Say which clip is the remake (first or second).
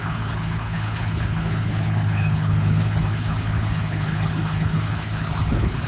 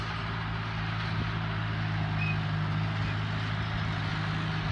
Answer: first